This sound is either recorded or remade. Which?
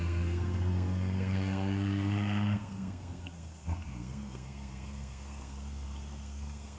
remade